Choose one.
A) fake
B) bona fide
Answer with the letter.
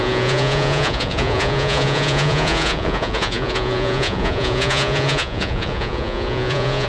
A